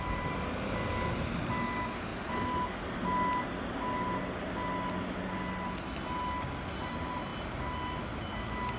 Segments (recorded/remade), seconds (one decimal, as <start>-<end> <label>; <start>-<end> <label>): 0.0-8.8 recorded